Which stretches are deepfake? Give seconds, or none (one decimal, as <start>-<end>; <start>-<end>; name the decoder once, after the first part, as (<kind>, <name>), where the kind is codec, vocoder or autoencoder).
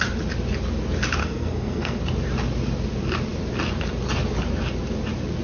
1.2-2.0 (codec, SNAC)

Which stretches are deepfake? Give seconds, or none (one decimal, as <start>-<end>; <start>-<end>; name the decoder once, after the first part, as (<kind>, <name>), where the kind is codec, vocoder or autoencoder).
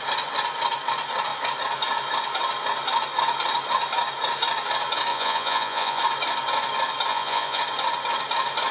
5.1-6.0 (vocoder, Vocos); 7.1-7.6